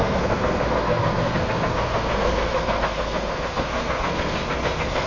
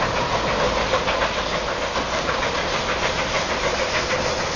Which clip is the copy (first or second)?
first